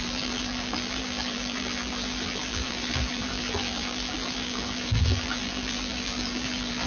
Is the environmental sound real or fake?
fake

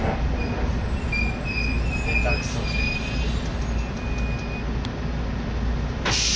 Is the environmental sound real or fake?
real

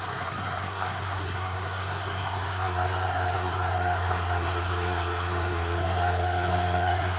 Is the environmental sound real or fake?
fake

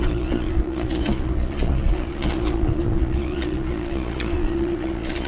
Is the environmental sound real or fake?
fake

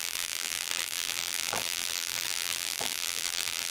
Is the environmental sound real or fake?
fake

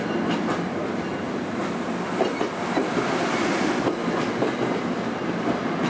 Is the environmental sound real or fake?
real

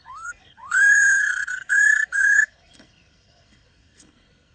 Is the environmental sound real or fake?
fake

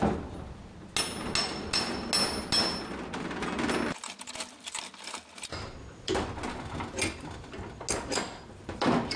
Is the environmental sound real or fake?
real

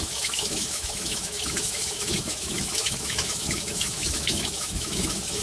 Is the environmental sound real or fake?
fake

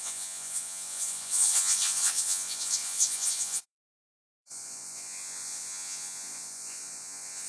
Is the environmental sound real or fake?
fake